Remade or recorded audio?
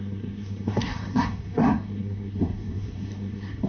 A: remade